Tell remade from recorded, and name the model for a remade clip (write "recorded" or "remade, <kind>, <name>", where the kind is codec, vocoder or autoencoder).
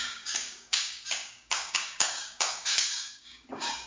remade, codec, DAC